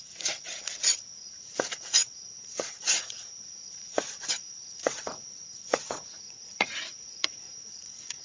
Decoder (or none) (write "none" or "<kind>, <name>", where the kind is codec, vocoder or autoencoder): vocoder, Vocos